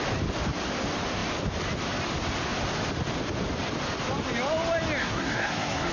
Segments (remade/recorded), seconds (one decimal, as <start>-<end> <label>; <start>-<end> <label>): 0.0-5.0 recorded; 5.0-5.9 remade